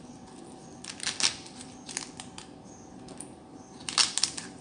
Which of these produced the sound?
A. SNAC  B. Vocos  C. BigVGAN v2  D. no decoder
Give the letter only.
D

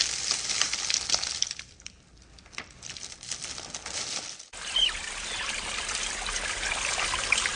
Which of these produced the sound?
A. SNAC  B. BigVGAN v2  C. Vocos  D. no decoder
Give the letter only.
B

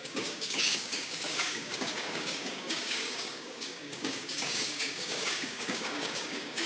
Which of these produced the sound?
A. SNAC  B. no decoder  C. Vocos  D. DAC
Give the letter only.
D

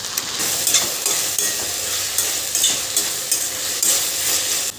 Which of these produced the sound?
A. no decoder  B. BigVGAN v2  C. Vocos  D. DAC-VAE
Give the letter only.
A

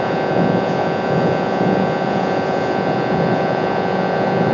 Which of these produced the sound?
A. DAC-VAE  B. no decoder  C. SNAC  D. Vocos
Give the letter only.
D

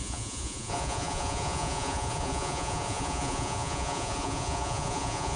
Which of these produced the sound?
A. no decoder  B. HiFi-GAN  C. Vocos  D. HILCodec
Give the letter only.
C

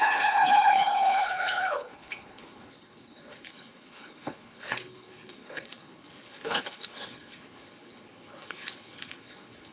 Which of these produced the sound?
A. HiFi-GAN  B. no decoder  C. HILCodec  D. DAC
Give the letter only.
C